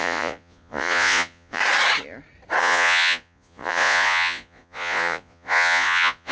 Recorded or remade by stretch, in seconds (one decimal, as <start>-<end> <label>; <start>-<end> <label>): 0.0-1.6 remade; 1.6-2.6 recorded; 2.6-6.3 remade